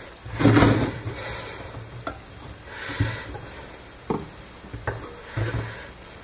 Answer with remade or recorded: recorded